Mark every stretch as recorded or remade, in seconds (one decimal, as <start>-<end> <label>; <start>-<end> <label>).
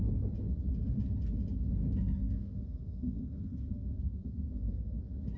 0.0-1.8 recorded; 1.8-5.0 remade; 5.0-5.4 recorded